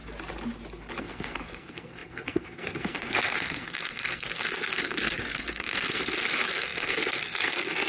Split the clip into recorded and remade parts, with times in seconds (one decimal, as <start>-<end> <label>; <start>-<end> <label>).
0.0-1.0 recorded; 1.0-7.9 remade